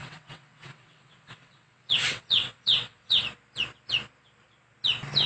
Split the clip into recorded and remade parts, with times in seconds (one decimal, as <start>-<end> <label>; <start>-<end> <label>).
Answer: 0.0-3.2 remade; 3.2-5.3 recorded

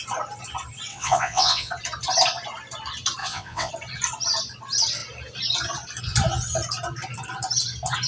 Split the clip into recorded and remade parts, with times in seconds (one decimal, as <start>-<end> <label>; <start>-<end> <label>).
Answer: 0.0-0.9 recorded; 0.9-1.7 remade; 1.7-3.2 recorded; 3.2-3.7 remade; 3.7-8.1 recorded

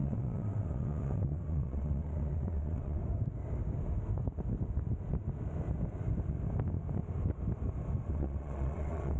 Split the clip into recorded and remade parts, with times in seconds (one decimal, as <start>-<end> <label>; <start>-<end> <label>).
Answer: 0.0-3.0 remade; 3.0-8.1 recorded; 8.1-9.2 remade

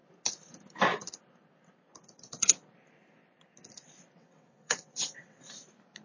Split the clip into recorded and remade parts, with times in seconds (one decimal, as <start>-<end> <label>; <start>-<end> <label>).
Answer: 0.0-4.2 recorded; 4.2-5.5 remade; 5.5-6.0 recorded

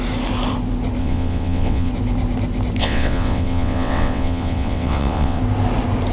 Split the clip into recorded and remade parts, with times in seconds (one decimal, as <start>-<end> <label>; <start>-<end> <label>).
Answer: 0.0-1.0 recorded; 1.0-1.9 remade; 1.9-2.8 recorded; 2.8-5.4 remade; 5.4-6.1 recorded